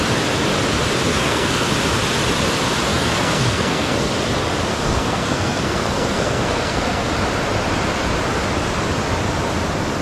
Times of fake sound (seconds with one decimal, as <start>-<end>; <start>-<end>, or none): 1.1-1.7; 2.9-4.1; 4.7-7.1